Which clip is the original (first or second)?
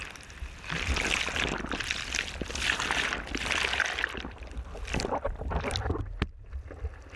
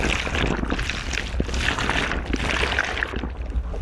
second